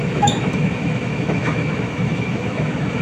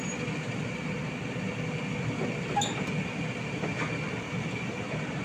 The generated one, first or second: first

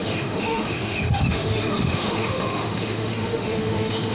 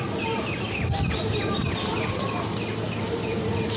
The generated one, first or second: first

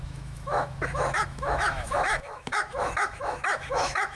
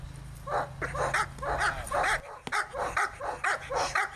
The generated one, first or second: first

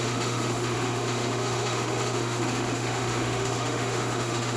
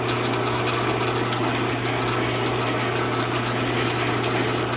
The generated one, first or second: first